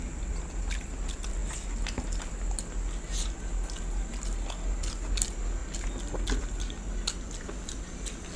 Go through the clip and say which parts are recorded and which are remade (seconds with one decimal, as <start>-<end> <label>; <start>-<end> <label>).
0.0-8.4 recorded